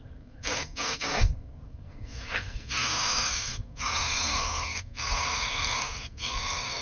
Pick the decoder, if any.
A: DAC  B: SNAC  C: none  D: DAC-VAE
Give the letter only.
B